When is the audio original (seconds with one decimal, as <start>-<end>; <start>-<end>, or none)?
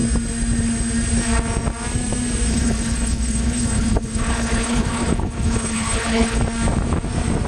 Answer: 0.0-2.5; 6.4-7.5